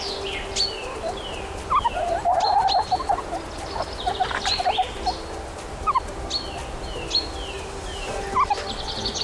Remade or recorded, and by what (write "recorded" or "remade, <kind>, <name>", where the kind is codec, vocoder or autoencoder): recorded